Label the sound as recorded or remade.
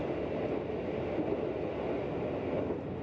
recorded